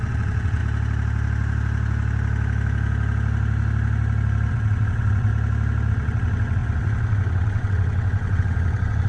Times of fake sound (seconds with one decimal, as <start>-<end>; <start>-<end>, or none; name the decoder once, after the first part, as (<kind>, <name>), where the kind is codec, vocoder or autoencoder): 0.0-0.6 (vocoder, WaveNeXt); 4.5-5.3; 5.9-9.1